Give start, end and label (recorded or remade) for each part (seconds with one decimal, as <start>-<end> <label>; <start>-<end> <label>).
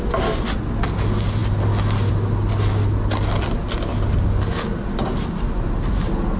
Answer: 0.0-6.4 recorded